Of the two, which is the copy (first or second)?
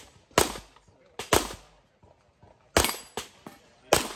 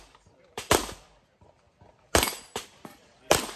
second